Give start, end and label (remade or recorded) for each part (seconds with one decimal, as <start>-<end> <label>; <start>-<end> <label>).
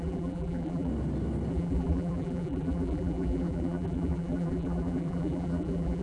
0.0-0.9 remade; 0.9-1.5 recorded; 1.5-6.0 remade